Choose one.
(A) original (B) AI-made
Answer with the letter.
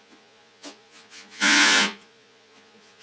B